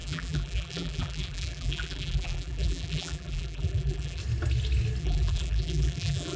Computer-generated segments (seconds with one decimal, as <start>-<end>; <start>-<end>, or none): 0.0-4.2; 5.0-6.4